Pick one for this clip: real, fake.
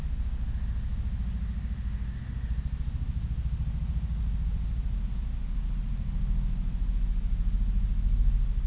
real